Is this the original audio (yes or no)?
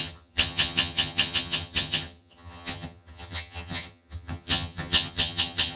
no